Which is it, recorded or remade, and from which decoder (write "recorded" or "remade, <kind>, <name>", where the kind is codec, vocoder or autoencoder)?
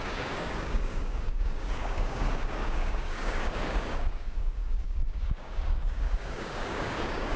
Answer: remade, codec, DAC